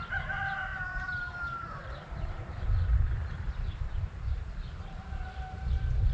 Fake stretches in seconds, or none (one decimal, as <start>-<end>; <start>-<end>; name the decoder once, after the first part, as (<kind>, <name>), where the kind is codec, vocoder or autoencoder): 0.7-4.4 (vocoder, BigVGAN v2)